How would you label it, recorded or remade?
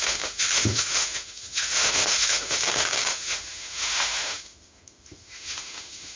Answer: remade